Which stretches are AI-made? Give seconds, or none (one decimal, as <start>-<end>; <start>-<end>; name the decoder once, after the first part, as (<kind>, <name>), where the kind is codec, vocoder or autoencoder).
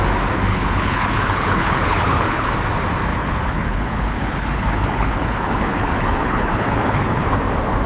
0.5-2.5 (codec, HILCodec); 3.1-7.2